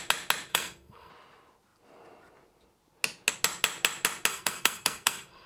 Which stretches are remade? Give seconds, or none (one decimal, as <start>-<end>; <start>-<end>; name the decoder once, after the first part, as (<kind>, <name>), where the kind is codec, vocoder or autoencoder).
0.5-1.1 (codec, SNAC); 4.3-5.5